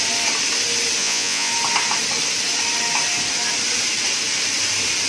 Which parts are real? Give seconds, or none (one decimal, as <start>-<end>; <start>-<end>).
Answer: 0.0-1.0; 1.5-5.1